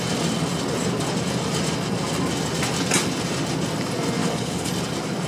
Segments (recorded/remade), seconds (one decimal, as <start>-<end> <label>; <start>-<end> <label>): 0.0-4.2 recorded; 4.2-4.7 remade; 4.7-5.3 recorded